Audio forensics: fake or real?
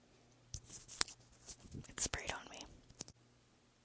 real